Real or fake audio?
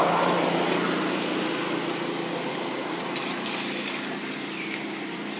real